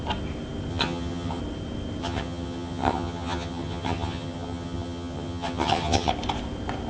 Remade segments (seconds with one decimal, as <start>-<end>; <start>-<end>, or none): 0.7-1.4; 2.0-6.1